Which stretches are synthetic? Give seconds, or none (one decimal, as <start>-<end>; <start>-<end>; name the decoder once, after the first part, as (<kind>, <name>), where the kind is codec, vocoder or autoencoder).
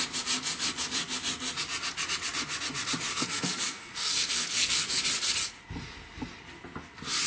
3.1-5.0 (codec, SNAC)